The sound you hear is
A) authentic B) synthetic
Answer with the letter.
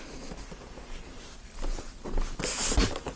A